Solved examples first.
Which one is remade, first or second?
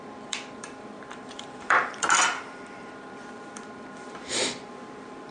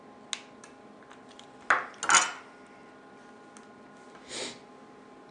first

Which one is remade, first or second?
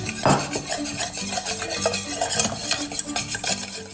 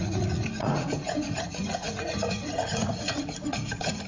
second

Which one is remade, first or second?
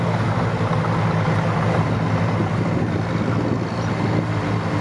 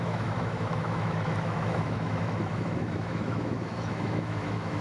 second